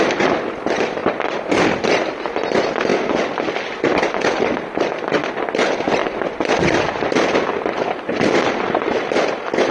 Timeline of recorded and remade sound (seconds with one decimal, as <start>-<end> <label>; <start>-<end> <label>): 0.0-9.7 recorded

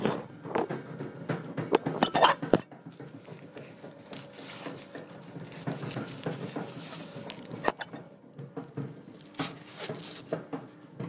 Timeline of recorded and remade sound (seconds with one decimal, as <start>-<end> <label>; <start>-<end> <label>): 0.0-11.1 recorded

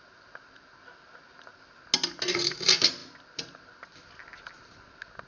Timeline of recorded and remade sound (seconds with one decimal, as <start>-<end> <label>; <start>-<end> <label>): 0.0-5.3 recorded

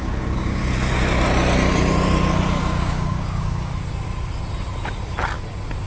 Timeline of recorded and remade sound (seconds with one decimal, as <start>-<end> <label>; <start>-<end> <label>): 0.0-0.6 remade; 0.6-2.6 recorded; 2.6-3.7 remade; 3.7-5.9 recorded

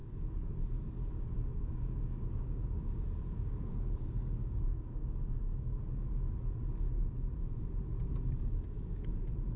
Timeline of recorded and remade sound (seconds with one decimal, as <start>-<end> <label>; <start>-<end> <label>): 0.0-0.5 remade; 0.5-1.5 recorded; 1.5-5.8 remade; 5.8-9.6 recorded

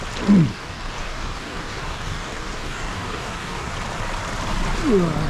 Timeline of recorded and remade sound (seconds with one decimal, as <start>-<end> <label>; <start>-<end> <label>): 0.0-0.5 recorded; 0.5-3.7 remade; 3.7-5.3 recorded

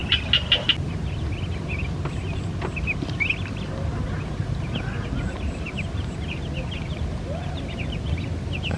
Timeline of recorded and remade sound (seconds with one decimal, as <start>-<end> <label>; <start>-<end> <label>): 0.0-8.8 recorded